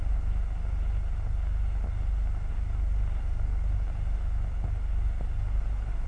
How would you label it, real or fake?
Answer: real